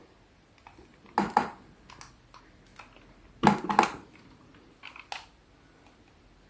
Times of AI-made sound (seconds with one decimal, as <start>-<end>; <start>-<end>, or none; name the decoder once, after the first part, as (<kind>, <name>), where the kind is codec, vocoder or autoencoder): none